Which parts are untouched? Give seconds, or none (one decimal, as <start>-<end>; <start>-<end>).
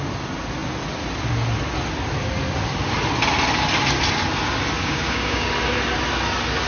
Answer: 0.0-4.8; 5.5-6.7